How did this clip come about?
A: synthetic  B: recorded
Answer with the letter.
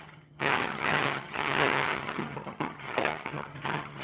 A